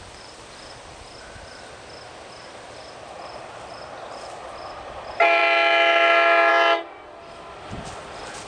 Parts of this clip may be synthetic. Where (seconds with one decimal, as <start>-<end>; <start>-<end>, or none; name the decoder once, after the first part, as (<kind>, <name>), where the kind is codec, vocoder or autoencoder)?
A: none